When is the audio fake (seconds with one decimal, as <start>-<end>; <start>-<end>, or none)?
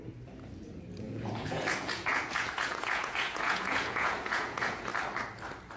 1.0-4.9